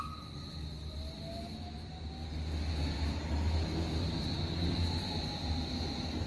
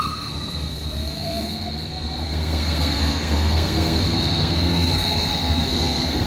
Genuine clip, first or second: first